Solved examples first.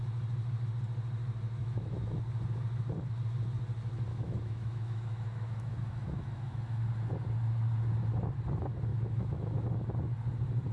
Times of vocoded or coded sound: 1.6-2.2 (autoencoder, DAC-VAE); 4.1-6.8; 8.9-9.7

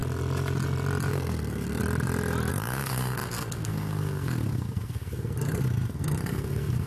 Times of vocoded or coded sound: 1.1-1.8 (codec, SNAC); 2.5-6.9

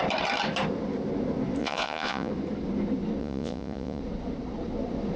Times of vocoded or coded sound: 1.6-2.3 (vocoder, Vocos); 3.2-4.0

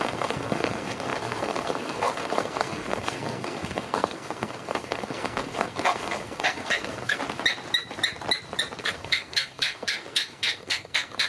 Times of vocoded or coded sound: 0.0-7.2 (codec, SNAC); 8.8-11.3

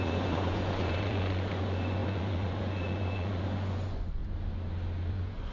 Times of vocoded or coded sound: 0.0-4.2 (vocoder, Vocos); 5.1-5.5

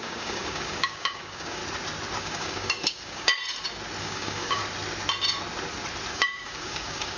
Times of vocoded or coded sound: 0.0-1.6 (codec, DAC); 2.2-3.3; 4.0-4.6; 6.1-7.2